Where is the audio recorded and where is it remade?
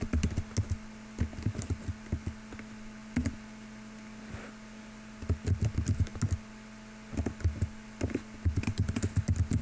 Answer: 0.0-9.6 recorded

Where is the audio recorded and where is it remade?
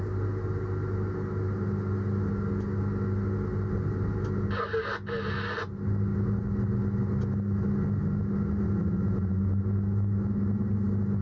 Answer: 0.0-11.2 recorded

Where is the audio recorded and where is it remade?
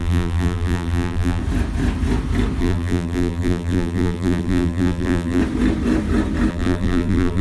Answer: 0.0-1.4 remade; 1.4-2.6 recorded; 2.6-5.4 remade; 5.4-6.5 recorded; 6.5-7.4 remade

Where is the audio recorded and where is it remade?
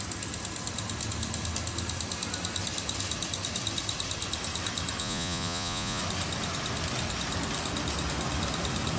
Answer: 0.0-5.0 recorded; 5.0-6.0 remade; 6.0-9.0 recorded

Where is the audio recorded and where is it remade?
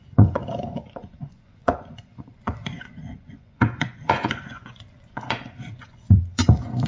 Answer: 0.0-6.9 remade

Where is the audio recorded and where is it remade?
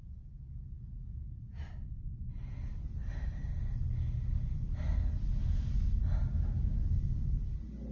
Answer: 0.0-7.9 recorded